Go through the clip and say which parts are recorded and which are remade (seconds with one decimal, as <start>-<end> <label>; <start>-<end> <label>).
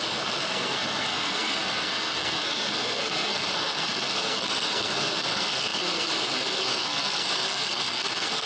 0.0-8.5 remade